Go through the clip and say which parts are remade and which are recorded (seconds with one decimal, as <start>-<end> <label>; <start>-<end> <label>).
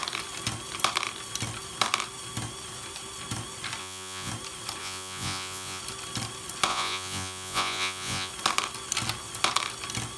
0.0-3.8 recorded; 3.8-4.3 remade; 4.3-4.8 recorded; 4.8-5.8 remade; 5.8-6.7 recorded; 6.7-8.3 remade; 8.3-10.2 recorded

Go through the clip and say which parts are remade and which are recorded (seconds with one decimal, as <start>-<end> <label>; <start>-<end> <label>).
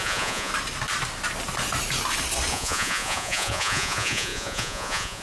0.0-0.5 remade; 0.5-2.5 recorded; 2.5-5.2 remade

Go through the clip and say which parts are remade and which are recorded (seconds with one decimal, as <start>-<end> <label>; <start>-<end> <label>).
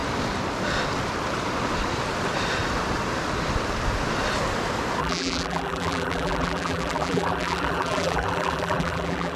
0.0-5.0 recorded; 5.0-9.4 remade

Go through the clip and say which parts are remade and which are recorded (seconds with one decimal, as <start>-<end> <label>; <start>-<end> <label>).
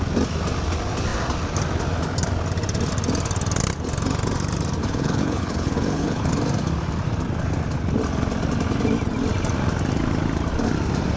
0.0-4.8 recorded; 4.8-6.3 remade; 6.3-11.2 recorded